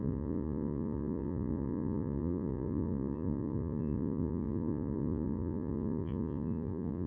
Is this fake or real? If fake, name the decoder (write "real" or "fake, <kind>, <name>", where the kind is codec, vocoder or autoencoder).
fake, vocoder, Vocos